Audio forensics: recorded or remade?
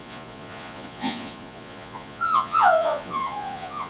remade